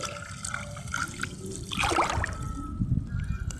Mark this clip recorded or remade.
recorded